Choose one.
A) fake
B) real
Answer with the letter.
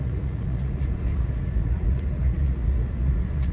A